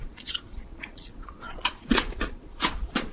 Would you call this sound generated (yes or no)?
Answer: yes